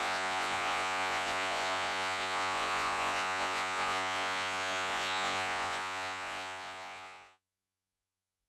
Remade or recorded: remade